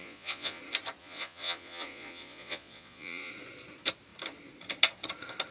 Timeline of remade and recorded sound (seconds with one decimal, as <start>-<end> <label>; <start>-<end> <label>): 0.0-0.6 remade; 0.6-1.0 recorded; 1.0-3.3 remade; 3.3-5.5 recorded

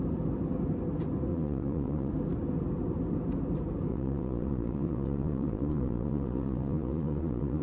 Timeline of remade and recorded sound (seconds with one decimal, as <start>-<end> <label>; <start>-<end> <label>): 0.0-1.3 recorded; 1.3-2.1 remade; 2.1-3.9 recorded; 3.9-7.6 remade